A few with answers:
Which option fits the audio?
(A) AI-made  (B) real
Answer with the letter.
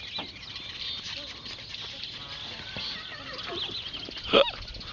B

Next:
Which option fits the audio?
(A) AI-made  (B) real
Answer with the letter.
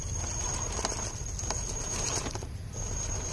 B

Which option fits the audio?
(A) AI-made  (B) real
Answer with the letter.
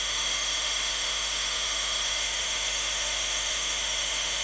A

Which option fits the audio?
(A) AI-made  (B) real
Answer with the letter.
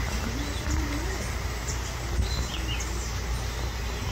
B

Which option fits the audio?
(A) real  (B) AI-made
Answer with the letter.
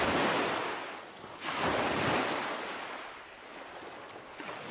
A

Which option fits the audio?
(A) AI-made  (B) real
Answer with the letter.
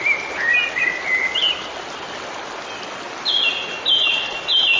B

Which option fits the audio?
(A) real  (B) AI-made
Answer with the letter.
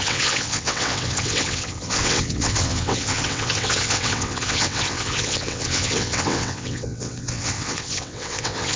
B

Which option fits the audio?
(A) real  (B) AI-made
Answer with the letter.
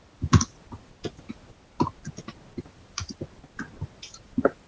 A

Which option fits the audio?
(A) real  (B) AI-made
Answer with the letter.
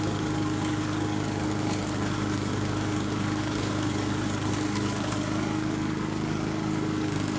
B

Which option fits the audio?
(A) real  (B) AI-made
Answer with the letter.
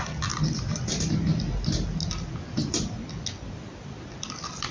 A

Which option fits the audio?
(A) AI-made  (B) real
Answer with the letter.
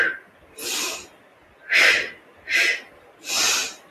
B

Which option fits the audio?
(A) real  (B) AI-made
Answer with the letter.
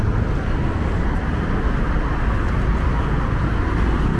A